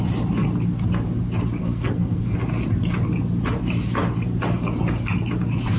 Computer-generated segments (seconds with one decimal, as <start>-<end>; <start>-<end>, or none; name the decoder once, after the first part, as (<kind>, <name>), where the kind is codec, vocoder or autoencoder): 1.6-2.3 (codec, SNAC)